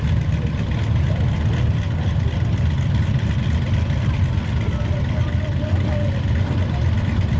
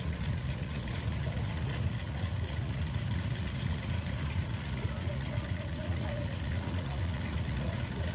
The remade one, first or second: second